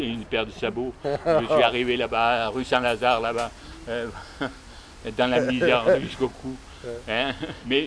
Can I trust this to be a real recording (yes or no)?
yes